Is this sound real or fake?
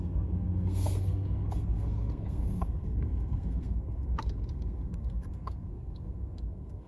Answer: fake